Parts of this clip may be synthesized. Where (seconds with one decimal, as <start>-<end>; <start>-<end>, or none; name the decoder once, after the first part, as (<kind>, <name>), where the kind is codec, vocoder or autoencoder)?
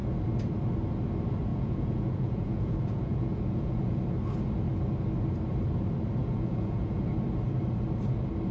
1.5-4.0 (vocoder, Vocos); 6.2-7.0